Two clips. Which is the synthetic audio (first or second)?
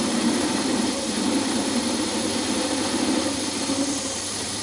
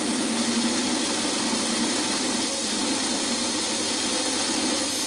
first